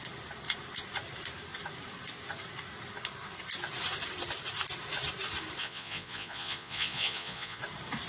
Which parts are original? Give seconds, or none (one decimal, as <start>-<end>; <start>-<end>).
0.0-5.6; 7.6-8.1